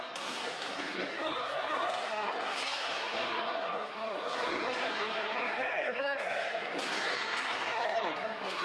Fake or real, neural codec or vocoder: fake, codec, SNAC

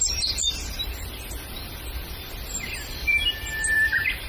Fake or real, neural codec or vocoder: fake, vocoder, BigVGAN v2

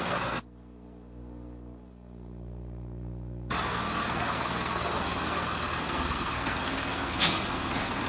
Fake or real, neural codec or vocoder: fake, codec, SNAC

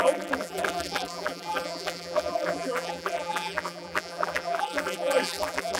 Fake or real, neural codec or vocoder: fake, vocoder, BigVGAN v2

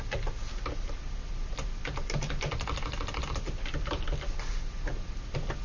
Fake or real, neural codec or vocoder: real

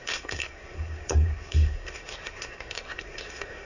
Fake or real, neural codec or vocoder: fake, codec, SNAC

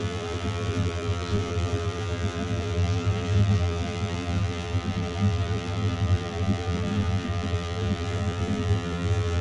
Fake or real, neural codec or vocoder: fake, vocoder, BigVGAN v2